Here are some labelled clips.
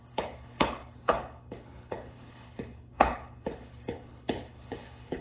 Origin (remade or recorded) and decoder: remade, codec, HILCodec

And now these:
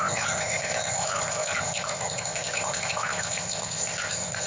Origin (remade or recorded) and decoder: remade, codec, ZipCodec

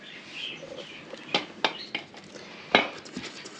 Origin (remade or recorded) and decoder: recorded